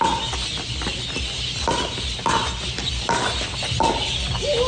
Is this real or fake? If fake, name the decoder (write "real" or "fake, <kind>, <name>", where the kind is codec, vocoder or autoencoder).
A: real